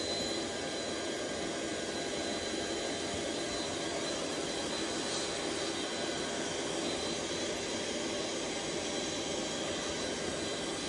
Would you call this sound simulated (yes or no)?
no